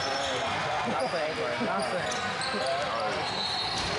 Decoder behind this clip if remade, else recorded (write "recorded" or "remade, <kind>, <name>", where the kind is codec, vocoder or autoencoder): recorded